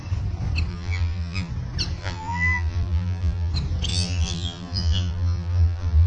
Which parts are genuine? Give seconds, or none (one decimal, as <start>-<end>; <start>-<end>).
0.0-0.7; 1.5-2.0; 3.5-3.9